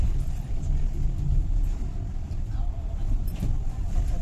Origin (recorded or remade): remade